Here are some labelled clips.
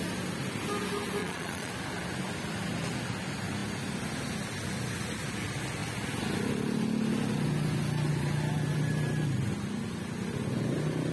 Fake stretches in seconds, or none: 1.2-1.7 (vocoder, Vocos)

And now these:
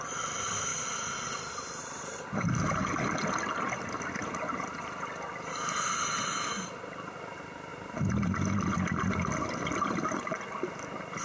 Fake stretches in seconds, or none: none

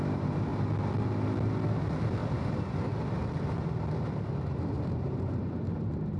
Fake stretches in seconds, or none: 0.0-0.5 (vocoder, BigVGAN v2); 1.8-2.2; 4.5-6.2

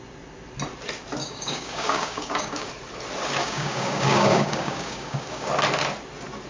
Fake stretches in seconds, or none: 1.2-2.7 (codec, DAC); 3.4-5.5

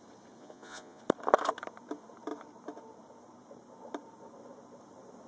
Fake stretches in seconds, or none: 0.4-1.0 (vocoder, Vocos)